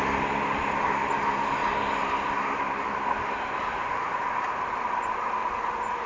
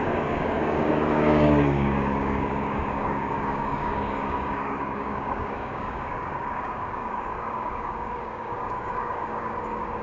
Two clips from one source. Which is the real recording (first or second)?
first